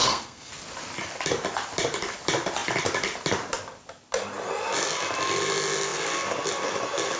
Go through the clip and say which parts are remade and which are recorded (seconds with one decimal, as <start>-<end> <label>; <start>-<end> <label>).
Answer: 0.0-0.5 remade; 0.5-7.2 recorded